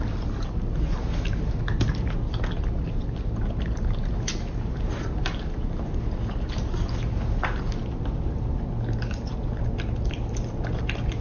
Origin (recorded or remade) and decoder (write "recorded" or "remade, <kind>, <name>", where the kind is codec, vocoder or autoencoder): recorded